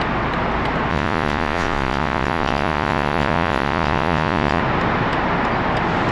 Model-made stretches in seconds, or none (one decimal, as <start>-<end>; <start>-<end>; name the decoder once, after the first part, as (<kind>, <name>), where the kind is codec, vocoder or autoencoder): 0.9-4.6 (vocoder, Vocos)